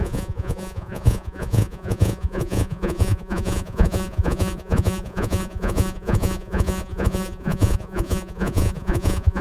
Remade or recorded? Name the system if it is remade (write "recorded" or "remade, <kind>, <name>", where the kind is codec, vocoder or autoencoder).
remade, vocoder, Vocos